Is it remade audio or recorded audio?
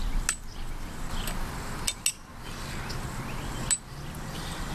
recorded